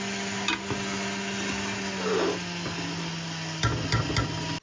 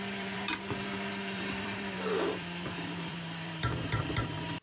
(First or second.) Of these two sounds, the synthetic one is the second